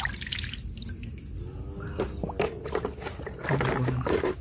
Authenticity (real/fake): real